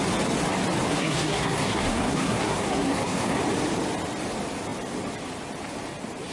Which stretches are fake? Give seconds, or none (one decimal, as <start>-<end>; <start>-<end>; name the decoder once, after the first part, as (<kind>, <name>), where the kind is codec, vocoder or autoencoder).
0.9-3.4 (codec, SNAC)